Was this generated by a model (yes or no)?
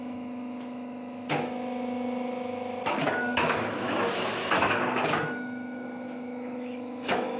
yes